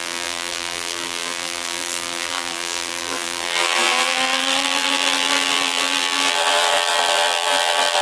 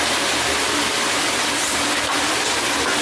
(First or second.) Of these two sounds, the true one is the second